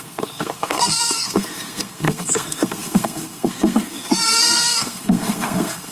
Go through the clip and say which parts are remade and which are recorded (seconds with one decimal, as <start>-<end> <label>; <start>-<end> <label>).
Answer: 0.0-5.9 remade